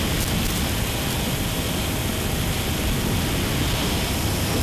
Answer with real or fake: real